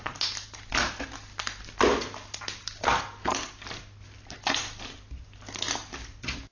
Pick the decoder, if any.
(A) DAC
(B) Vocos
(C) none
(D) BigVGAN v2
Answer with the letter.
C